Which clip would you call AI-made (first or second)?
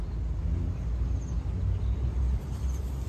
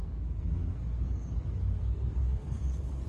second